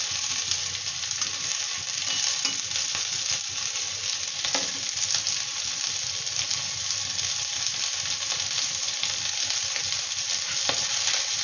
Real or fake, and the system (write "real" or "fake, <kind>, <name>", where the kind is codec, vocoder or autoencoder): real